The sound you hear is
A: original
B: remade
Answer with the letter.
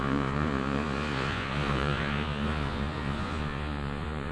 B